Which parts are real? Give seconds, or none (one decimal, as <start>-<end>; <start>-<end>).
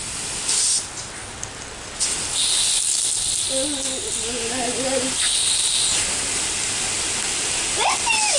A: 0.0-8.4